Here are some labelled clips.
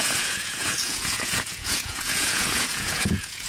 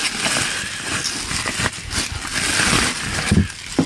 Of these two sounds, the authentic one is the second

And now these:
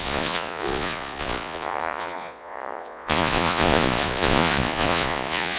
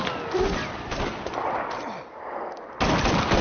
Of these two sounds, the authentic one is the second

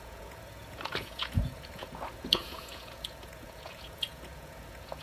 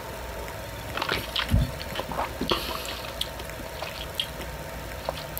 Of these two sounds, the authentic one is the second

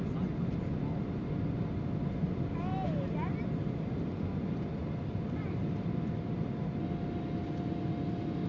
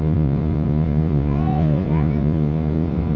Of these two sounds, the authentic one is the first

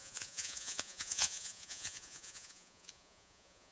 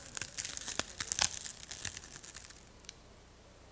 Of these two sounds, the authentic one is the second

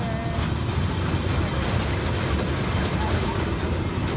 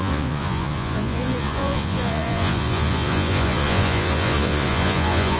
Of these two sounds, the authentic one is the first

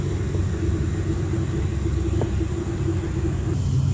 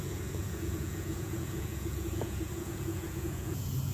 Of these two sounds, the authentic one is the first